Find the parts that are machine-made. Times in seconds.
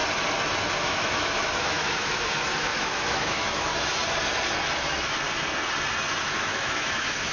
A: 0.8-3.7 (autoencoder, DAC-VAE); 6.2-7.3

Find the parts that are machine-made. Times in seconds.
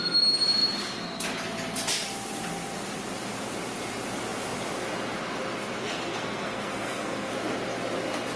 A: 5.8-7.3 (codec, SNAC)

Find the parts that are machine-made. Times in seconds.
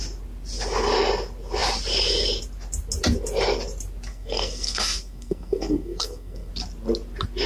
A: 4.1-6.5 (codec, SNAC)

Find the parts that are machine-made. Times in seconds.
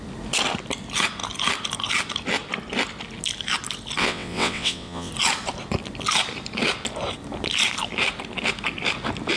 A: 4.0-5.1 (vocoder, WaveNeXt)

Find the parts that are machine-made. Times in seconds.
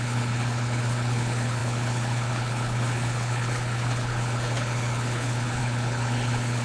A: 0.0-6.6 (codec, HILCodec)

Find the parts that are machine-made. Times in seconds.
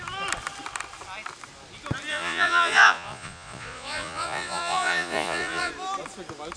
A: 2.1-5.7 (vocoder, Vocos)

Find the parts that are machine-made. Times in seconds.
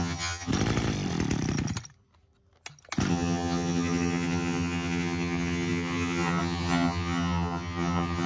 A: 0.0-0.5 (vocoder, HiFi-GAN); 3.1-8.3